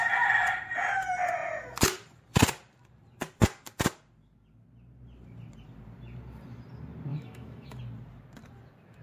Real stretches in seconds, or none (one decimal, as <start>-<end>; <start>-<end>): 0.0-7.1; 7.8-9.0